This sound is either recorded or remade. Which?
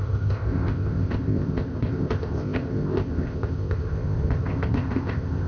remade